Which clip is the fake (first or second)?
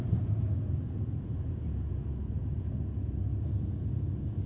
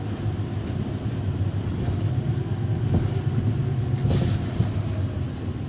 first